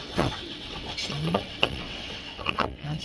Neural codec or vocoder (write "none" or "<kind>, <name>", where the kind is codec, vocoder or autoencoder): vocoder, WaveNeXt